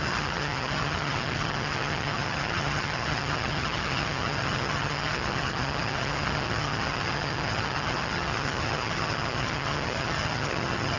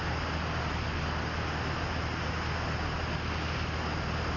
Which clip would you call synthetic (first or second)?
first